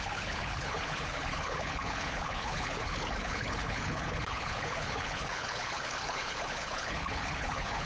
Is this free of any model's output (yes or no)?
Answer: no